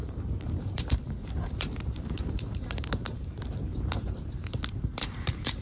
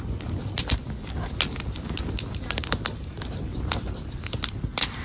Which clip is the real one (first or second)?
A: second